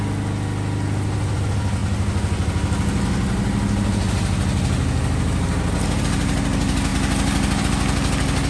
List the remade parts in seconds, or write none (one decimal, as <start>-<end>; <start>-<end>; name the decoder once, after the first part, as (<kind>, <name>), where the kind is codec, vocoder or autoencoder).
none